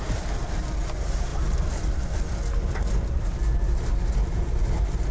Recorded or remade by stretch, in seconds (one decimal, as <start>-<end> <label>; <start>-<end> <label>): 0.0-5.1 recorded